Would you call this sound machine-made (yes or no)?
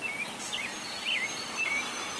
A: no